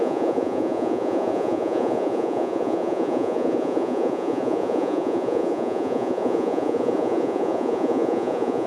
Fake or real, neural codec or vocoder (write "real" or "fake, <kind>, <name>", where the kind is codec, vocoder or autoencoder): fake, vocoder, Vocos